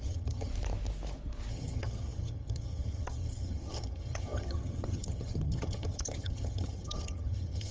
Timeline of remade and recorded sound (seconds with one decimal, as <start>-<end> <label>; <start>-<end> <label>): 0.0-0.5 remade; 0.5-1.5 recorded; 1.5-7.7 remade

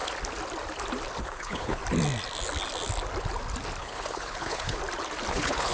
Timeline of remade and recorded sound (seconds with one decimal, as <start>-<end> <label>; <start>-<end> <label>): 0.0-1.2 recorded; 1.2-1.8 remade; 1.8-3.8 recorded; 3.8-4.8 remade; 4.8-5.3 recorded; 5.3-5.7 remade

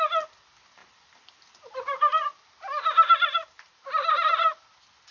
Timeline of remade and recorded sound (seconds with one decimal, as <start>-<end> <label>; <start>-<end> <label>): 0.0-0.8 recorded; 0.8-3.9 remade; 3.9-5.1 recorded

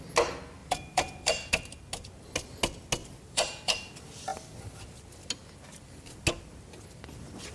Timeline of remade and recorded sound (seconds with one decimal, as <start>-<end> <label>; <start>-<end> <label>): 0.0-0.6 recorded; 0.6-1.5 remade; 1.5-3.0 recorded; 3.0-3.9 remade; 3.9-7.5 recorded